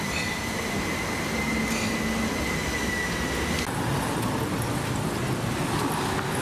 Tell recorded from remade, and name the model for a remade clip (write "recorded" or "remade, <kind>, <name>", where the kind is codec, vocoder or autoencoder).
recorded